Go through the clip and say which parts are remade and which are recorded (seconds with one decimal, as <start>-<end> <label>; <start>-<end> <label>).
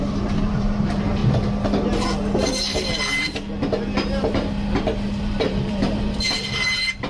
0.0-1.2 remade; 1.2-5.2 recorded; 5.2-7.1 remade